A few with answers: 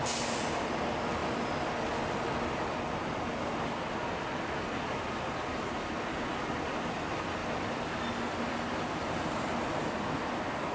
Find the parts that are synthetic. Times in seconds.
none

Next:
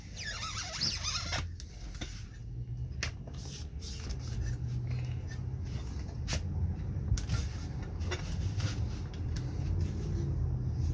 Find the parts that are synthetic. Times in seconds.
none

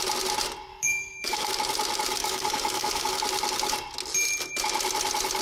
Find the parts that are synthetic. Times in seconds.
0.7-1.5 (codec, DAC); 2.2-3.1

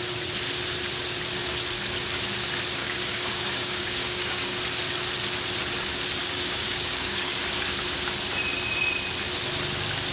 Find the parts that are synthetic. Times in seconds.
2.8-4.6 (codec, DAC); 6.2-7.4